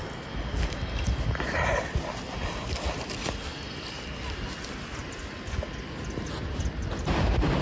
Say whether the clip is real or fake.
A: real